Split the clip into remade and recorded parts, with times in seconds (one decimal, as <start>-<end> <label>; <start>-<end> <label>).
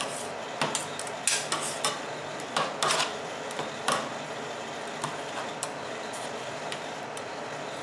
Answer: 0.0-2.3 recorded; 2.3-7.0 remade; 7.0-7.8 recorded